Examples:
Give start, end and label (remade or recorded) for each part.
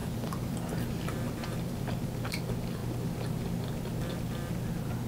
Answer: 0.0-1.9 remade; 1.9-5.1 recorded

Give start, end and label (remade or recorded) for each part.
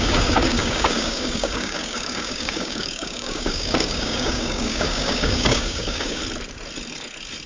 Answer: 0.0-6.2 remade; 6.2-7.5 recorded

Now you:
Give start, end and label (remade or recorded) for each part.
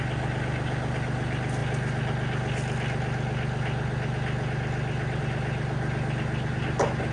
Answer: 0.0-7.1 recorded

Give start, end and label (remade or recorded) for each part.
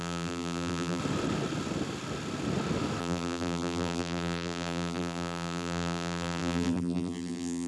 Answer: 0.0-1.0 remade; 1.0-3.0 recorded; 3.0-7.7 remade